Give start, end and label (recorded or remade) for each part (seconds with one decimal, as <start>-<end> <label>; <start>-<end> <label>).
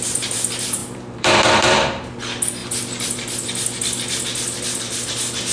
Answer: 0.0-0.8 recorded; 0.8-2.1 remade; 2.1-5.5 recorded